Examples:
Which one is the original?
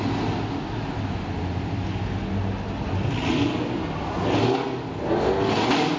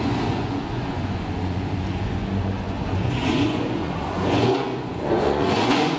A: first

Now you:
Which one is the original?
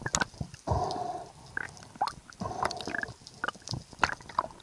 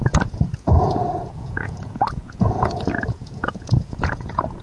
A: first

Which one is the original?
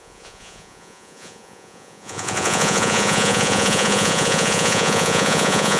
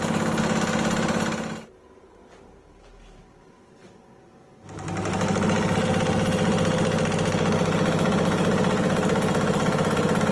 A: second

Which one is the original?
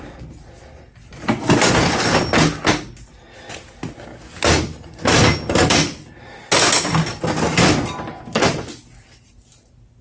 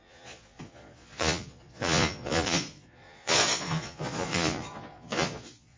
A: first